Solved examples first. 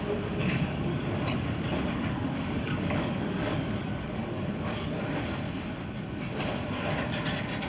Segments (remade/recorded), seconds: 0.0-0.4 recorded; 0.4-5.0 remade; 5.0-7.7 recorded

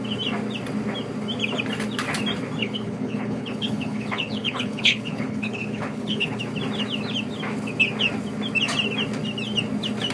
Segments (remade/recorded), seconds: 0.0-2.6 recorded; 2.6-6.4 remade; 6.4-10.1 recorded

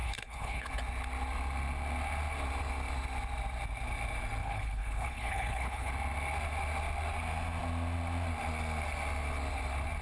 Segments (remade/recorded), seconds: 0.0-0.7 remade; 0.7-4.4 recorded; 4.4-5.9 remade; 5.9-10.0 recorded